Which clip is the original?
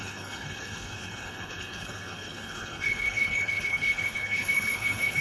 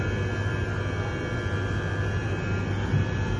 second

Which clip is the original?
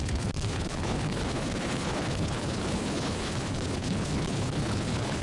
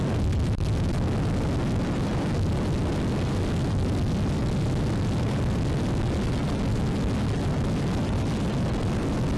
second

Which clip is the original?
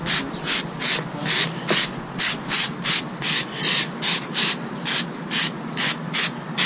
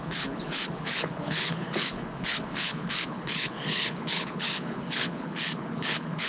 first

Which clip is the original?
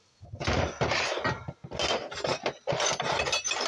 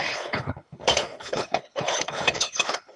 first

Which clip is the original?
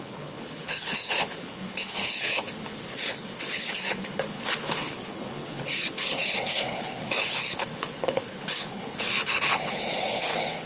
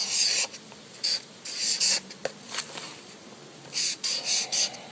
second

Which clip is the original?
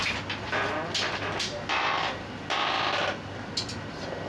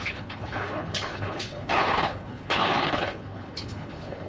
first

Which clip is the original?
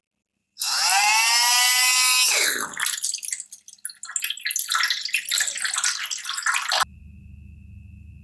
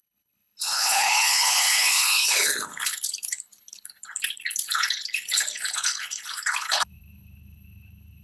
first